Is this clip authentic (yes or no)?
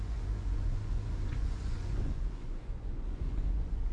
no